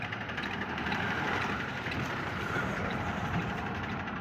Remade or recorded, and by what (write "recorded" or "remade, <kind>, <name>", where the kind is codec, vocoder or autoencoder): remade, vocoder, BigVGAN v2